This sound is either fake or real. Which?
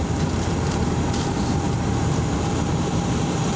fake